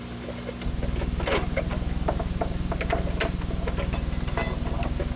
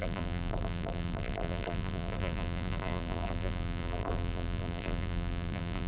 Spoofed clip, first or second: second